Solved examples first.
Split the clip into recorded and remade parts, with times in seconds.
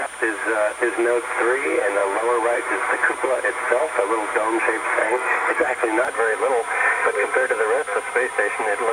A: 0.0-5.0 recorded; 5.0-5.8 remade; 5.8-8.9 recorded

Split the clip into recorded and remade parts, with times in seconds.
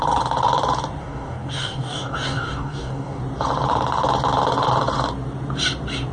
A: 0.0-1.0 recorded; 1.0-3.2 remade; 3.2-6.1 recorded